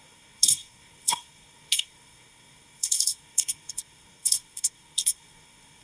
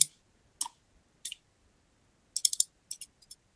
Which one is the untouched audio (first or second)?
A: second